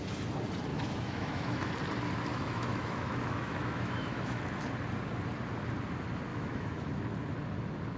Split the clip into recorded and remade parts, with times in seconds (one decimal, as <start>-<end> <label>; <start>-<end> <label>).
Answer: 0.0-0.7 recorded; 0.7-1.7 remade; 1.7-2.3 recorded; 2.3-4.4 remade; 4.4-6.3 recorded; 6.3-6.9 remade; 6.9-8.0 recorded